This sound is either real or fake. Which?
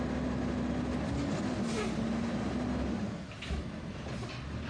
real